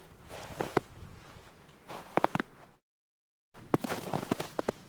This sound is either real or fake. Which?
fake